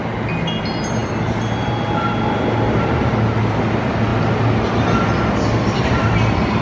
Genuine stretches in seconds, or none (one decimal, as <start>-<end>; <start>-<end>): 0.0-6.6